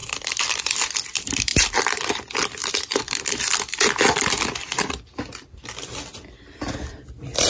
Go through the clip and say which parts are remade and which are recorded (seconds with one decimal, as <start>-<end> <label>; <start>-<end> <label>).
0.0-0.6 remade; 0.6-1.5 recorded; 1.5-2.1 remade; 2.1-2.6 recorded; 2.6-3.2 remade; 3.2-7.5 recorded